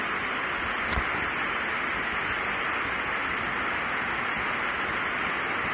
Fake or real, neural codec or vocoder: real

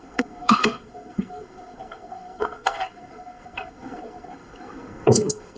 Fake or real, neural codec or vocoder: fake, codec, SNAC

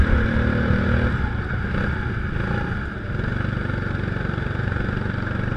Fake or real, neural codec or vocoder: real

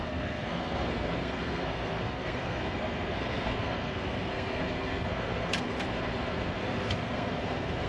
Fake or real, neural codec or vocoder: fake, codec, SNAC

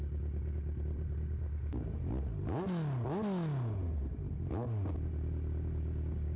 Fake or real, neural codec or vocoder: real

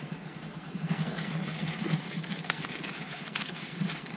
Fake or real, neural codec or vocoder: fake, codec, SNAC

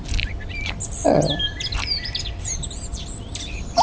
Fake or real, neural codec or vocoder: real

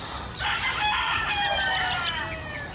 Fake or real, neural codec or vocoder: real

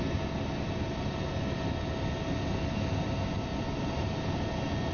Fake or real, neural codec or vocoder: real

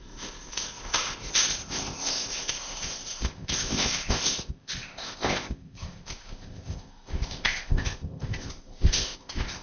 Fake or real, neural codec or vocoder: fake, codec, ZipCodec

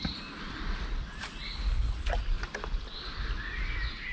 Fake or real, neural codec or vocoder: real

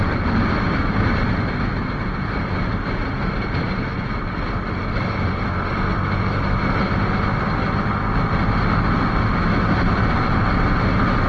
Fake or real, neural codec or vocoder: real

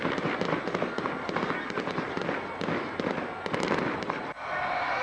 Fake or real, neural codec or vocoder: real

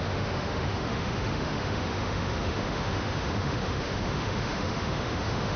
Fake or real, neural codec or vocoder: fake, autoencoder, DAC-VAE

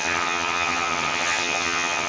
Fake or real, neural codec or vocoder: fake, vocoder, HiFi-GAN